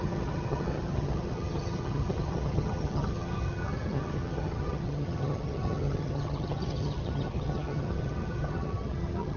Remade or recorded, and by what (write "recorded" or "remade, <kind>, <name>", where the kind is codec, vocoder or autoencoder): remade, vocoder, HiFi-GAN